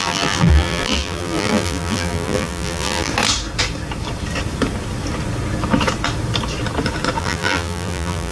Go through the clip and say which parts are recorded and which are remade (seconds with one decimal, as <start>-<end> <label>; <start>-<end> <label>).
0.0-3.1 remade; 3.1-7.2 recorded; 7.2-8.3 remade